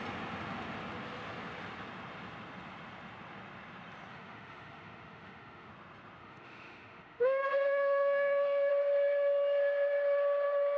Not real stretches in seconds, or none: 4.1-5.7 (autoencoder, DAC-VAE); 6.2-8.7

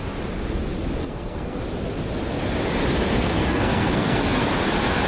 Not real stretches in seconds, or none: 1.0-1.6 (codec, SNAC); 3.2-4.5

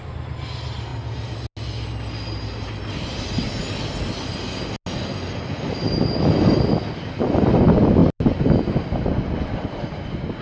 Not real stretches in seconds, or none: none

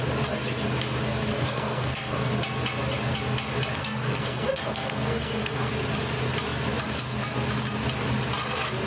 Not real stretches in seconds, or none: 1.3-2.3 (codec, SNAC); 3.8-5.7

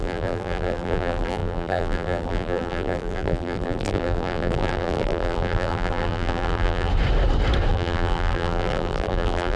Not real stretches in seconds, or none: 0.0-6.9 (vocoder, BigVGAN v2); 7.7-9.6

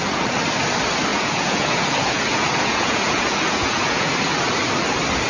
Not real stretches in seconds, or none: 1.1-4.1 (vocoder, Vocos)

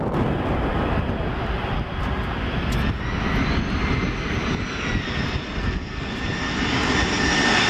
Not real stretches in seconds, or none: 5.6-6.1 (codec, SNAC)